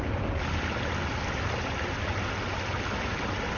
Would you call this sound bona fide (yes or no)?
yes